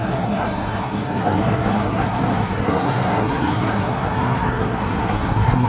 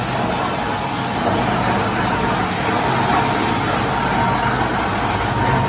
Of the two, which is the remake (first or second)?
first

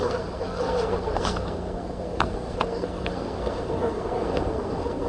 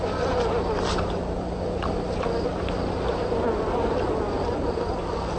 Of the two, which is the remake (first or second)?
first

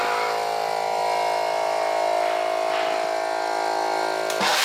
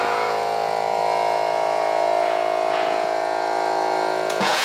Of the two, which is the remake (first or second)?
second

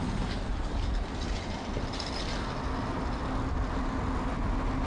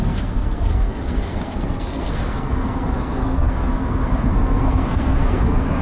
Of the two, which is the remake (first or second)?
second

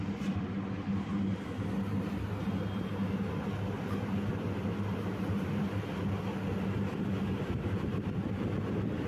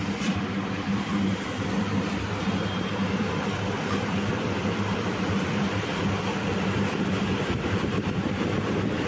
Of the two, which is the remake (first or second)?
second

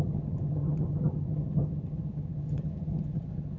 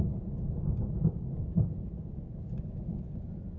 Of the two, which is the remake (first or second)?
first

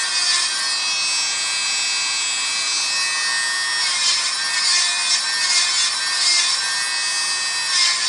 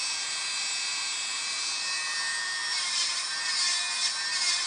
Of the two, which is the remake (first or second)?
second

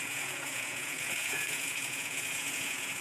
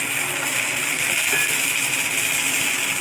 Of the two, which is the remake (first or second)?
first